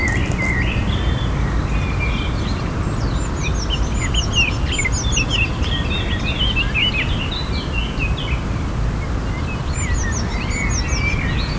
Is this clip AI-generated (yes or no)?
no